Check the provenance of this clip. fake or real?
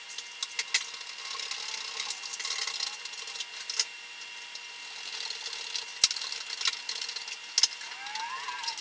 real